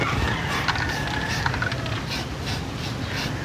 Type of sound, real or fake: real